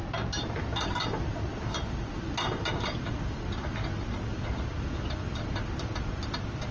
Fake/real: real